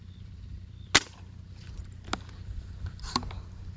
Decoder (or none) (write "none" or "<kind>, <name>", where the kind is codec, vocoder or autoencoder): none